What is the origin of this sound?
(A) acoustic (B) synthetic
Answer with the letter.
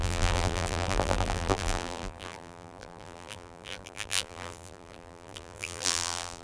B